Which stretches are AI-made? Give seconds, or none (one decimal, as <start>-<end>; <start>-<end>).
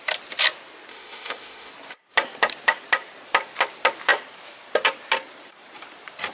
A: 0.9-1.7